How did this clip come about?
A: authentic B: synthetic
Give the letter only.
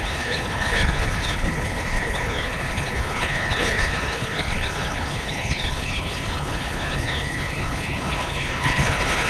B